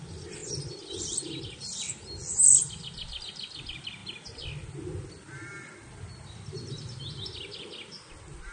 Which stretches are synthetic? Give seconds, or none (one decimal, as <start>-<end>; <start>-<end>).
none